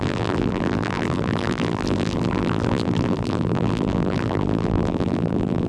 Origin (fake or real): fake